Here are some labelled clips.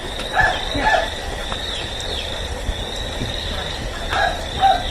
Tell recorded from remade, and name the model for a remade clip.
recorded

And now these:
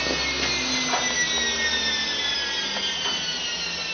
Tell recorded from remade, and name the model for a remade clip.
recorded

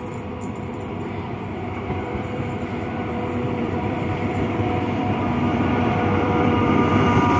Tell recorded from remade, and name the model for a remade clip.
remade, vocoder, BigVGAN v2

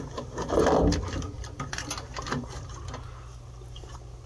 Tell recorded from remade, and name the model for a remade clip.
recorded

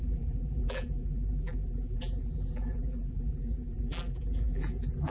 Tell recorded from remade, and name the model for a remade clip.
remade, vocoder, BigVGAN v2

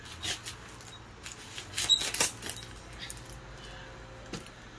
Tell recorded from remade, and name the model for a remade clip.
recorded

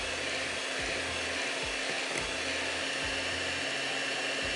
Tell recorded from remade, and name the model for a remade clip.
recorded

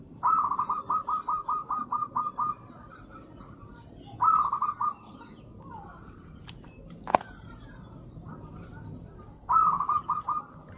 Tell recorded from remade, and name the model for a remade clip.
remade, vocoder, BigVGAN v2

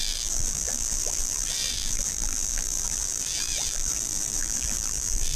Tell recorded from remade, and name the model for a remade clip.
remade, vocoder, BigVGAN v2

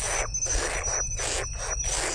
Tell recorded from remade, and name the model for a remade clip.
recorded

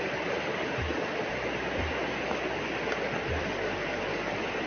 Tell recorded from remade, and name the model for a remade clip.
recorded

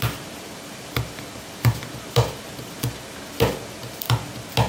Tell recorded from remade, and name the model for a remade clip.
remade, vocoder, BigVGAN v2